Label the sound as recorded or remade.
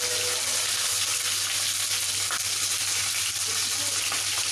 recorded